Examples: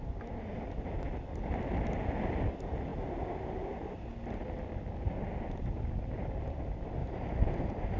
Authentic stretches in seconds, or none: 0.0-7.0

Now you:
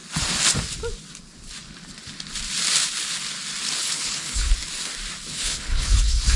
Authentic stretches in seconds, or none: 0.0-3.8; 4.5-5.3

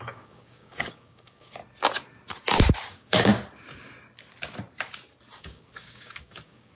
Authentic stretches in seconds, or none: 1.6-2.9; 3.3-5.4